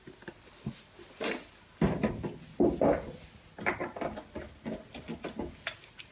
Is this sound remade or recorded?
recorded